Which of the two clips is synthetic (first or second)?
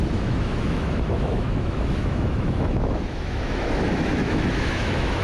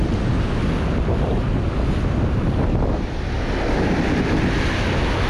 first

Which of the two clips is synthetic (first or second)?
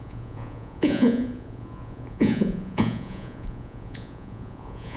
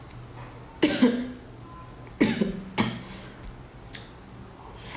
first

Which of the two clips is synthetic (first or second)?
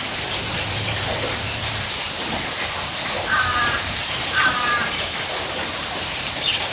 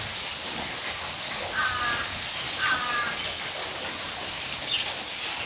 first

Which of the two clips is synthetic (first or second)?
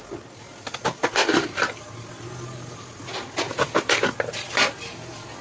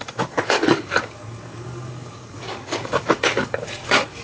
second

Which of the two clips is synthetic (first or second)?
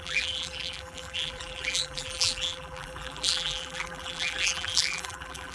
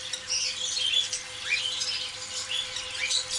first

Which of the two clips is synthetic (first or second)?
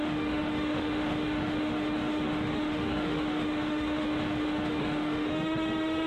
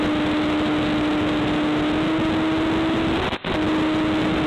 first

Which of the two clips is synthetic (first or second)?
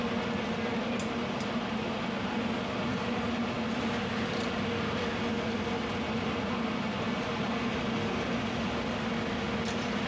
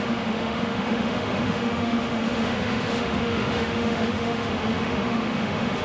second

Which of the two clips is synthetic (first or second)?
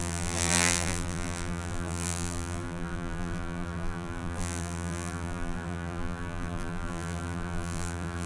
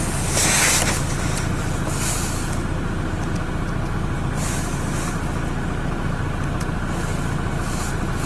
first